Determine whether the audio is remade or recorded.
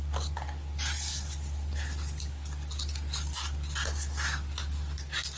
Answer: recorded